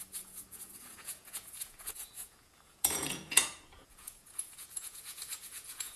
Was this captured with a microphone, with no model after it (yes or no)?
no